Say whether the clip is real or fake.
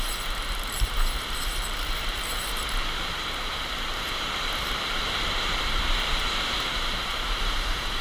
fake